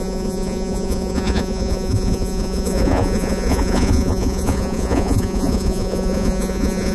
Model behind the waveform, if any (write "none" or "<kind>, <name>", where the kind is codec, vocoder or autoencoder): vocoder, Vocos